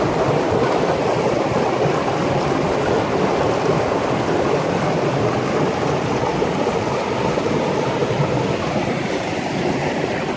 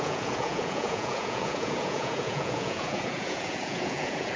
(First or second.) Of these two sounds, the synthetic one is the second